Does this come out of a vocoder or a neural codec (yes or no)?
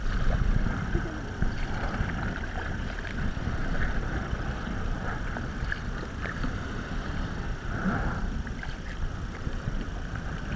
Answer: no